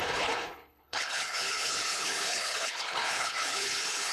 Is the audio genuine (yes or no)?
no